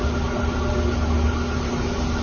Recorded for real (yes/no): yes